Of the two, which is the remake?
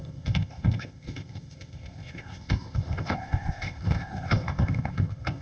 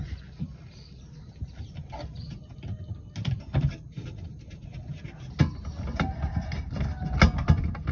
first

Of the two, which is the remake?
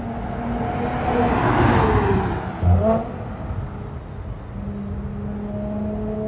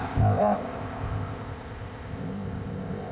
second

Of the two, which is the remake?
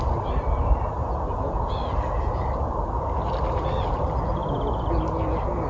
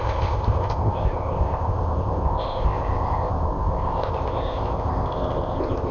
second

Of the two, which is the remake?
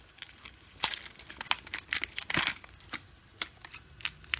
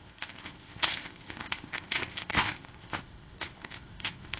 second